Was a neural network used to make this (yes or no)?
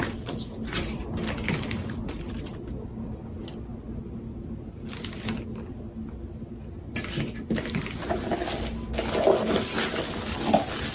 no